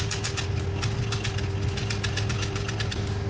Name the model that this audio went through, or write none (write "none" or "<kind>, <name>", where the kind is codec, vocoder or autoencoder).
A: none